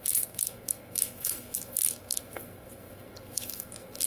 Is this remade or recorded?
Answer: remade